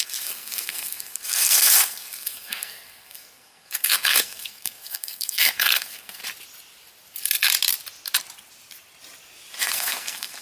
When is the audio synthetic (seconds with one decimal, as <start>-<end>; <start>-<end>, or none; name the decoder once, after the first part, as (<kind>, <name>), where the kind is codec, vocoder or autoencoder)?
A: 0.0-6.2 (codec, SNAC); 9.6-10.4